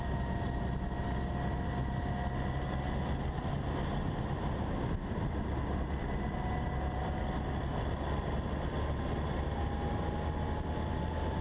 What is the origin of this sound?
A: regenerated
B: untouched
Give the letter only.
B